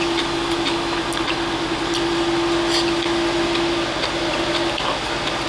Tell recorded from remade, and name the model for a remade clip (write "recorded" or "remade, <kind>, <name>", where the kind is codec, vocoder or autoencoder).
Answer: recorded